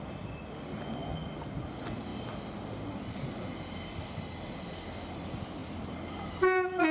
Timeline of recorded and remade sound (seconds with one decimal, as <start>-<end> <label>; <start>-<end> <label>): 0.0-6.9 recorded